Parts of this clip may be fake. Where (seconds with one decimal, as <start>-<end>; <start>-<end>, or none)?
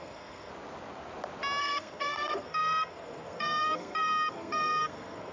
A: 0.0-0.5; 1.6-5.3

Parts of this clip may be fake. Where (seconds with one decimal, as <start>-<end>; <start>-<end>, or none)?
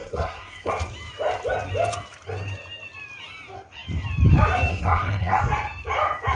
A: 0.0-0.7; 4.7-5.4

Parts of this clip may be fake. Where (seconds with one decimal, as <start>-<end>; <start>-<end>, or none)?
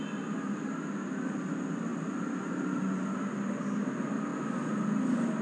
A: none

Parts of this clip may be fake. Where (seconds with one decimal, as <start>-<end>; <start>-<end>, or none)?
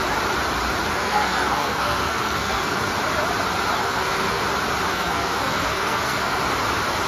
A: 0.9-2.9; 3.8-4.4; 4.9-6.4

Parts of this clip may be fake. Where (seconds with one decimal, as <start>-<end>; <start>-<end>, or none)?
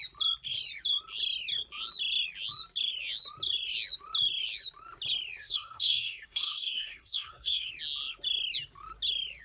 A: 5.4-7.7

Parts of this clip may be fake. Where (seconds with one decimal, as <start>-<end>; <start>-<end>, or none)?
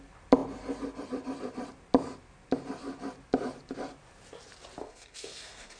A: 4.8-5.8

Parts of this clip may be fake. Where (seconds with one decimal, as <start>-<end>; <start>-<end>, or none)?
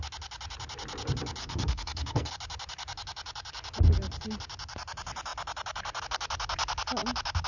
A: 1.4-2.3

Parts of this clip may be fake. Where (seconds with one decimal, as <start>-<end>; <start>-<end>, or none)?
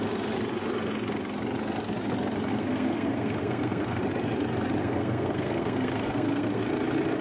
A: 2.5-4.0; 4.8-6.6